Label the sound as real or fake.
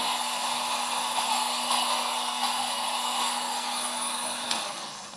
fake